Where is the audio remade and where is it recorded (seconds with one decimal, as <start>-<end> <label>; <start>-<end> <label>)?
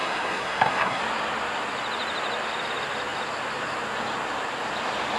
0.0-1.0 remade; 1.0-5.2 recorded